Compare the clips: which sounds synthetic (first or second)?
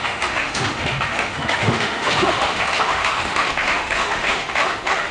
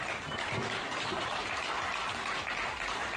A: first